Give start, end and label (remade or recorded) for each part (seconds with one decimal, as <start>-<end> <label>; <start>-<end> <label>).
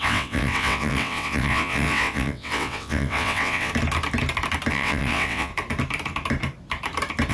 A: 0.0-3.7 remade; 3.7-4.7 recorded; 4.7-5.5 remade; 5.5-7.3 recorded